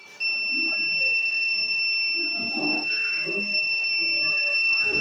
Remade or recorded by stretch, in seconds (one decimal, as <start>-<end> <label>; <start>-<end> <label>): 0.0-1.0 recorded; 1.0-1.8 remade; 1.8-2.6 recorded; 2.6-3.9 remade; 3.9-4.3 recorded; 4.3-5.0 remade